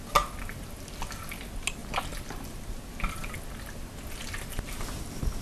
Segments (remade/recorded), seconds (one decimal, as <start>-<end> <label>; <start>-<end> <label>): 0.0-5.4 recorded